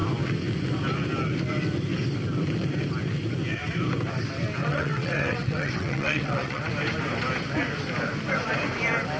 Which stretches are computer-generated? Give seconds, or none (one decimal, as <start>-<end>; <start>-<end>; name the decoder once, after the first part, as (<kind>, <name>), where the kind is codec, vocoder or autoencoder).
4.6-6.7 (vocoder, WaveNeXt)